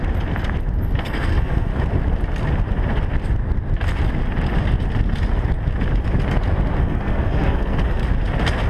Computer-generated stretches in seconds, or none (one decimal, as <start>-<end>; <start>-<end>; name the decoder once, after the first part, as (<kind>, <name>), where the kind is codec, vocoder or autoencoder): 1.0-1.7 (codec, SNAC); 6.8-8.0